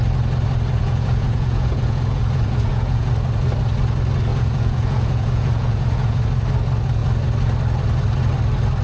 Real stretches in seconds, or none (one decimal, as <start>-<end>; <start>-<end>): 0.0-0.8; 3.1-4.3; 6.2-8.8